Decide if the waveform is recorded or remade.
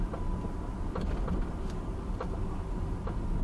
recorded